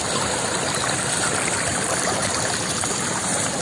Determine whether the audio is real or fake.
fake